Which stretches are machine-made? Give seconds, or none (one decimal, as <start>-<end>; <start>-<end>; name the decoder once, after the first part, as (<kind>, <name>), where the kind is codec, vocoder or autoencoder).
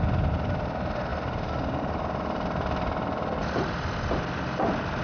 none